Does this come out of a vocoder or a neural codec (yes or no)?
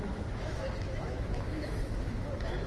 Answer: yes